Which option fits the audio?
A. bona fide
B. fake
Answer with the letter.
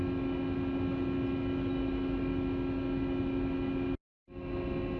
A